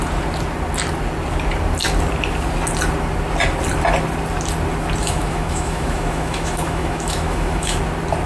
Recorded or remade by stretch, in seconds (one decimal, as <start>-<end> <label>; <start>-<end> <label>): 0.0-5.0 recorded; 5.0-7.8 remade; 7.8-8.3 recorded